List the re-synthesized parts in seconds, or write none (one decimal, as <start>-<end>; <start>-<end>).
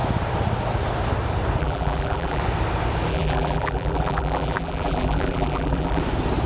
1.6-2.4; 3.1-6.0